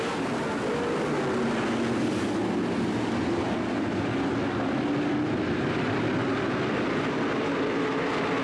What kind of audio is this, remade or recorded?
recorded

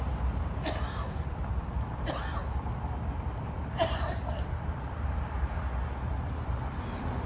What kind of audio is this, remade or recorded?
remade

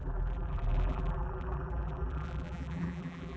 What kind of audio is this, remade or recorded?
remade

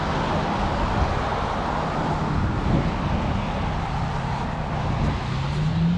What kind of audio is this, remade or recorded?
recorded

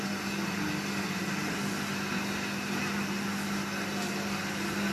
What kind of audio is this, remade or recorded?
remade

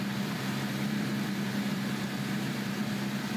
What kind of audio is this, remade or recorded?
remade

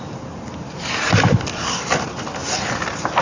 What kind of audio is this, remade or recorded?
recorded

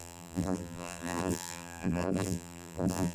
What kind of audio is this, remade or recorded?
remade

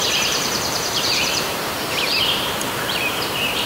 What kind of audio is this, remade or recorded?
remade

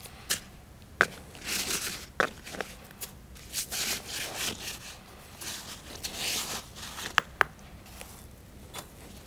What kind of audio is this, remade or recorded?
recorded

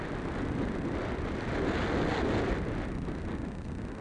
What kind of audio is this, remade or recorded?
recorded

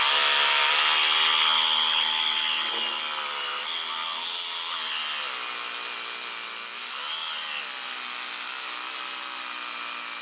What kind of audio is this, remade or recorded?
recorded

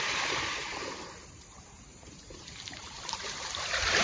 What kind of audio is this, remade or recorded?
remade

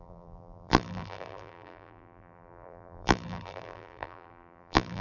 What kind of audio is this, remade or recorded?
remade